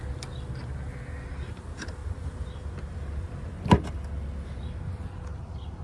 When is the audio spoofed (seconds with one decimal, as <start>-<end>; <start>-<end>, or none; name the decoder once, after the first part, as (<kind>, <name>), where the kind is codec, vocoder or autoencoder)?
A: none